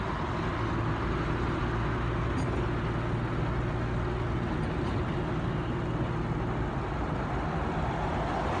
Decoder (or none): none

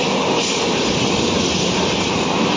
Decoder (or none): vocoder, BigVGAN v2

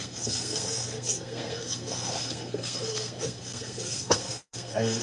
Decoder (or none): codec, SNAC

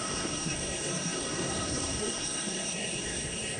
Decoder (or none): codec, SNAC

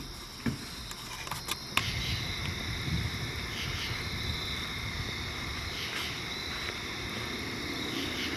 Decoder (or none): none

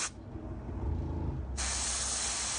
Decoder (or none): none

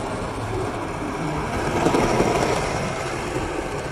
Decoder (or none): none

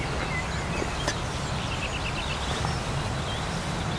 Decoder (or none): none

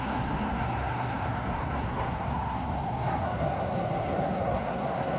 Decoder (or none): codec, SNAC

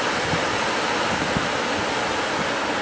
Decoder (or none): none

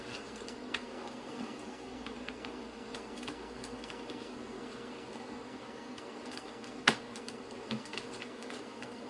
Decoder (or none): codec, SNAC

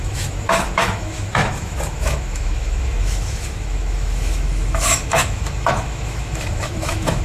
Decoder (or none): autoencoder, DAC-VAE